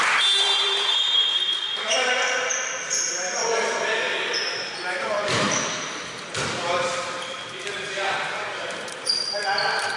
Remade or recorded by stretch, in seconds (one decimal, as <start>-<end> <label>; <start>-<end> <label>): 0.0-4.1 remade; 4.1-4.9 recorded; 4.9-10.0 remade